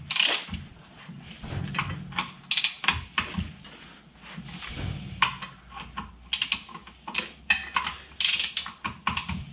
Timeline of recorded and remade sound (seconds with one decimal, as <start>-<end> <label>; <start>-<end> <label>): 0.0-9.5 recorded